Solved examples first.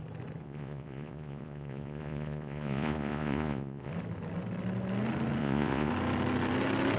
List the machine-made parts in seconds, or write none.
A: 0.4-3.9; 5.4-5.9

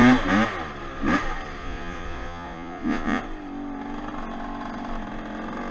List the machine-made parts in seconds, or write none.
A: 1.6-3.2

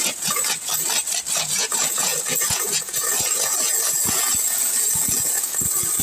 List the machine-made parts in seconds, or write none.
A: 0.0-0.7; 1.4-6.0